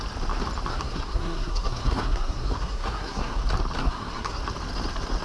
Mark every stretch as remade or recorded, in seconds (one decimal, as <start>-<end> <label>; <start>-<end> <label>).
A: 0.0-0.7 recorded; 0.7-3.4 remade; 3.4-3.8 recorded; 3.8-4.4 remade; 4.4-5.2 recorded